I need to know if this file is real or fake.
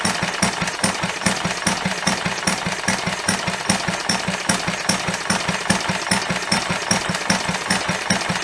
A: real